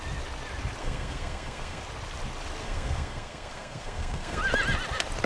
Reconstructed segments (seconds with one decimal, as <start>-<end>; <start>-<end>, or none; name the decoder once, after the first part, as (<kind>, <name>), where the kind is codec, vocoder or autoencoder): 0.8-1.8 (codec, SNAC); 2.6-4.4